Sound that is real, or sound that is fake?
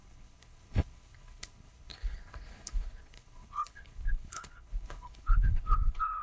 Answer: fake